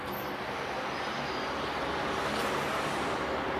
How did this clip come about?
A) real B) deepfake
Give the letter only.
A